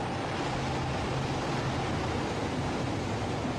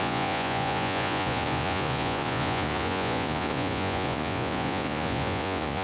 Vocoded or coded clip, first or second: second